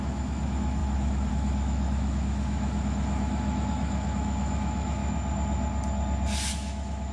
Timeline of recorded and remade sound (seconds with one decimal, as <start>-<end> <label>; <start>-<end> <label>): 0.0-5.0 remade; 5.0-6.5 recorded; 6.5-7.1 remade